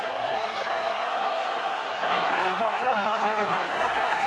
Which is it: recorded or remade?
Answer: remade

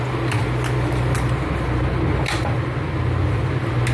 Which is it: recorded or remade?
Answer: recorded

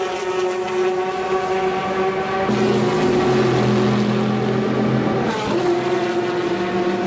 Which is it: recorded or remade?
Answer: recorded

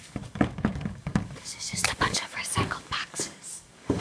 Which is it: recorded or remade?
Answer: remade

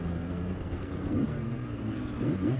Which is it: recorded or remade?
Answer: remade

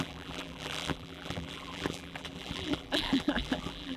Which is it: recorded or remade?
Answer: remade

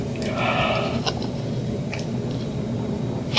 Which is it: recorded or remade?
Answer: remade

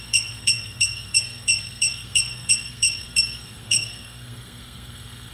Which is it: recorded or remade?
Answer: remade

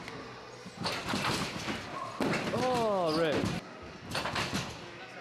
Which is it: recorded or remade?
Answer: recorded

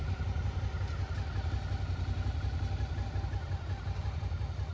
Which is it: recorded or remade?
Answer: recorded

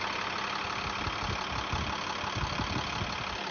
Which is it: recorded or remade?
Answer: recorded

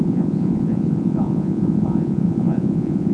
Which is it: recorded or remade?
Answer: remade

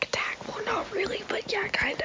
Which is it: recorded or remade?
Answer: recorded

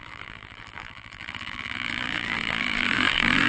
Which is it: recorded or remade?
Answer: remade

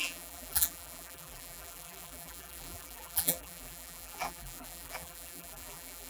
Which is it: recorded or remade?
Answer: remade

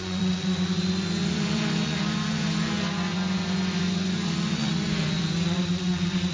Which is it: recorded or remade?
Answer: remade